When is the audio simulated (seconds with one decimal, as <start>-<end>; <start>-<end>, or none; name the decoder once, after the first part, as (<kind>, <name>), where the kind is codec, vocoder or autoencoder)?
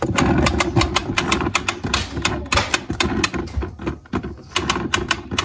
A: none